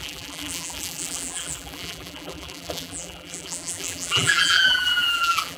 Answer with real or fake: fake